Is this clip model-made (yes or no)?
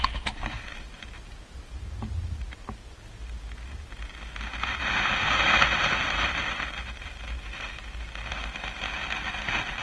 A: no